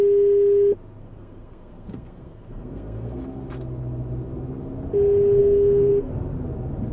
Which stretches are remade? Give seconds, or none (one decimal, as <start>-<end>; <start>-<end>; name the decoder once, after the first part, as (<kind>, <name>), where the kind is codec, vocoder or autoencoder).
1.0-3.2 (codec, SNAC); 5.4-6.1